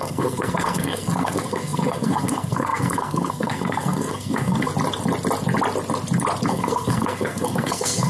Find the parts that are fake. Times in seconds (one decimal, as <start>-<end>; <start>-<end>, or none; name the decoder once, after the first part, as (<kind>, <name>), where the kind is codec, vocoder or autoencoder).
0.0-4.7 (codec, SNAC); 6.5-8.1